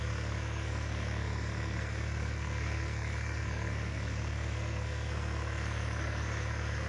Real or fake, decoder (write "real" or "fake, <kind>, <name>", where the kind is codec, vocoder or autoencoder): fake, codec, SNAC